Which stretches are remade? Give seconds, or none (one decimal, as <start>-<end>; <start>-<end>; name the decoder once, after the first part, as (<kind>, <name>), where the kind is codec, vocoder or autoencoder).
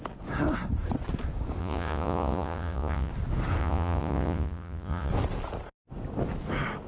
1.6-3.1 (vocoder, Vocos); 3.6-5.1